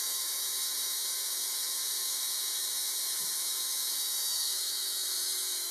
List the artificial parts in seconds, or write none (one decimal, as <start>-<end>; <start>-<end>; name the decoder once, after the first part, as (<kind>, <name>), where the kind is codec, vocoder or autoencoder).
0.0-5.7 (autoencoder, DAC-VAE)

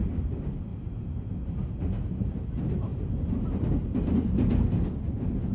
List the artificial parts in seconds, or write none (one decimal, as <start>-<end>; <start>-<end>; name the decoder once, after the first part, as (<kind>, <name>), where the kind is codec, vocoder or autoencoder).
0.0-0.7 (vocoder, BigVGAN v2); 2.3-5.5

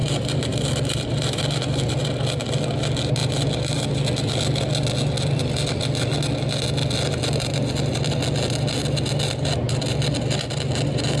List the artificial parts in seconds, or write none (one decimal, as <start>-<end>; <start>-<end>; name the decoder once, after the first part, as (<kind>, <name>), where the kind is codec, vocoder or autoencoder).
0.0-2.0 (vocoder, BigVGAN v2); 3.2-4.4

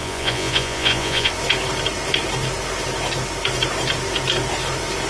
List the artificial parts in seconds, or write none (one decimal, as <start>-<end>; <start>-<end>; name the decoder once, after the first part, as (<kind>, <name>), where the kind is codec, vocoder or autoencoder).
0.0-1.3 (vocoder, Vocos)

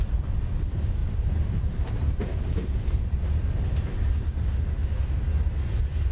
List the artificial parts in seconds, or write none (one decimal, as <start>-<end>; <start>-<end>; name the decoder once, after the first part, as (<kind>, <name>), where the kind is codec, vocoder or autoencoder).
1.0-3.4 (vocoder, BigVGAN v2)

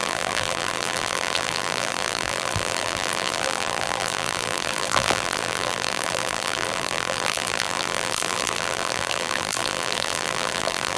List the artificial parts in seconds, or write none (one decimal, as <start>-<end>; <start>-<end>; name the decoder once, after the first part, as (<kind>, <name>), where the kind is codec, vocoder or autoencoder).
0.0-11.0 (vocoder, BigVGAN v2)

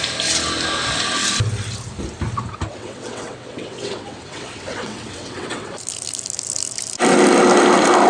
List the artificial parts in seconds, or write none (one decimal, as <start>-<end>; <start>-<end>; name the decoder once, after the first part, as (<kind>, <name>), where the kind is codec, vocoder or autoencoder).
2.7-5.7 (vocoder, WaveNeXt)

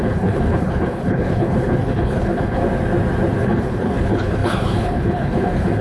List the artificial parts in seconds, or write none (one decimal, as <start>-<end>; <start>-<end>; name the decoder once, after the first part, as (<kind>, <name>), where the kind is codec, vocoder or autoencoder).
0.0-2.6 (codec, HILCodec); 3.4-5.8